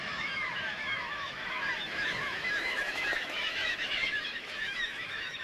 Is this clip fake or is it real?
fake